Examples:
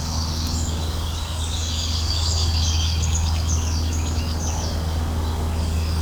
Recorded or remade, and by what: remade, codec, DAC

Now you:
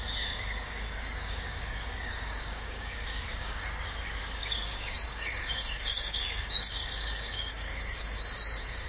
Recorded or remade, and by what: remade, codec, DAC